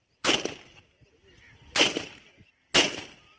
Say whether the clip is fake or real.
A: real